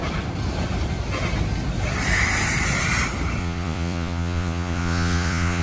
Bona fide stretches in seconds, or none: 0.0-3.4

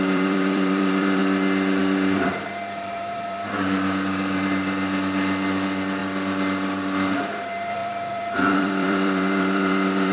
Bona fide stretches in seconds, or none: 1.2-1.8; 6.0-7.2